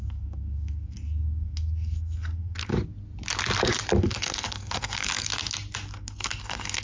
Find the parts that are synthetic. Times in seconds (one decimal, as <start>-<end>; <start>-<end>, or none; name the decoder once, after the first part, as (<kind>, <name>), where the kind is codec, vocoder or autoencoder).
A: 0.0-2.7 (codec, SNAC); 4.0-5.3; 5.9-6.8